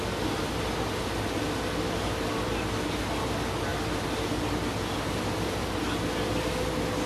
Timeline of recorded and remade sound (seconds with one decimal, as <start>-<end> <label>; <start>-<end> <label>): 0.0-7.1 recorded